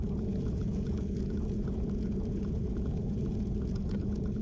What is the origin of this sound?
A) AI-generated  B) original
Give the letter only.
A